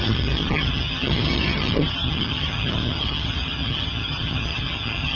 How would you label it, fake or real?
fake